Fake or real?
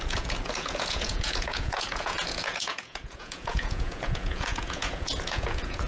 fake